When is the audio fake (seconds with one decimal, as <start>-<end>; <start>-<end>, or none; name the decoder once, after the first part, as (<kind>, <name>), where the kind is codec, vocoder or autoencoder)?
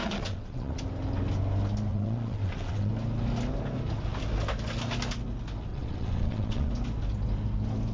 0.0-0.8 (vocoder, WaveNeXt); 1.9-2.9; 5.7-6.7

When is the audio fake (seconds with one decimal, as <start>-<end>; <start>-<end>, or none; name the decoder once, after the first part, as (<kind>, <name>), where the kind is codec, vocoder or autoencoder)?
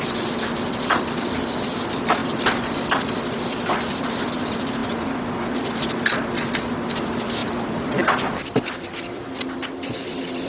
0.0-4.8 (vocoder, BigVGAN v2); 6.9-10.5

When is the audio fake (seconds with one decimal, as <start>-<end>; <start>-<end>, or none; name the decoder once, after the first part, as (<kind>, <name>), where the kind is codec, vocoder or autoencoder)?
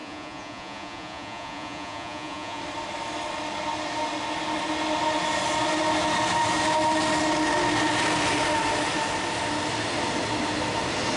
0.0-2.6 (vocoder, Vocos)